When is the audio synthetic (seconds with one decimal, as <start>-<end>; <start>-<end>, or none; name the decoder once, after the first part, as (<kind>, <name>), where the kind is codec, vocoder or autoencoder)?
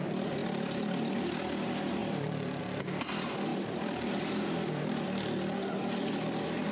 0.4-1.2 (vocoder, BigVGAN v2); 2.0-2.6; 3.5-4.5